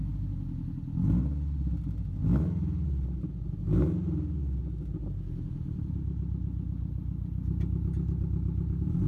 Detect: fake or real real